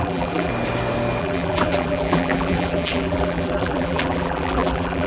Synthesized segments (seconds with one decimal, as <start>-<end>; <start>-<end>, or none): 0.0-0.5; 1.2-5.1